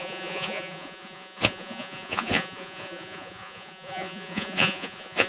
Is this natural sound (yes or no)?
no